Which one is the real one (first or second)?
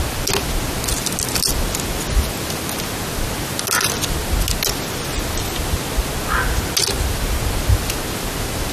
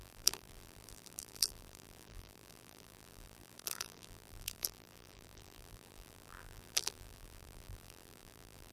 first